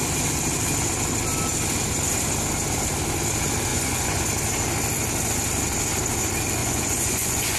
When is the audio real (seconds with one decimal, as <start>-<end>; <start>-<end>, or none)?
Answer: 0.0-3.7; 4.2-6.6